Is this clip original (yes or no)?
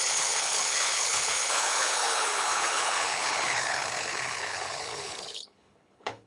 no